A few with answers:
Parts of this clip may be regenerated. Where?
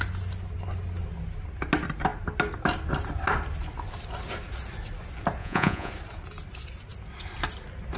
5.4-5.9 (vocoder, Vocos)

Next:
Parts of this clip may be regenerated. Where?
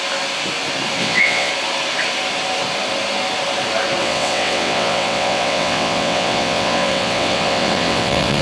1.0-1.5 (vocoder, WaveNeXt); 4.0-8.4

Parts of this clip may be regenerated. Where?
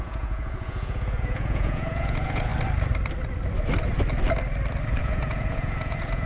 0.0-2.5 (vocoder, Vocos); 5.0-6.3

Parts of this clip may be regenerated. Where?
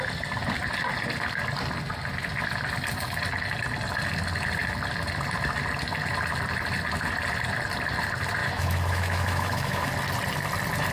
8.4-9.9 (autoencoder, DAC-VAE)